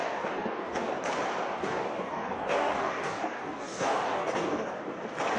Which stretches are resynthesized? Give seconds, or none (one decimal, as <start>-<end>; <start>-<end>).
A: 0.0-0.9; 1.6-4.8